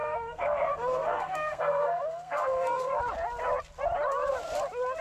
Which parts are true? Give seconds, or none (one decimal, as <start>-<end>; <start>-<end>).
3.0-5.0